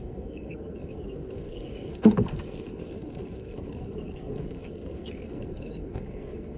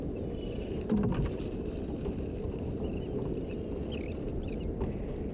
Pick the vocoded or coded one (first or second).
first